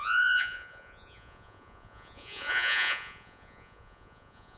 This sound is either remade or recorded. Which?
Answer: remade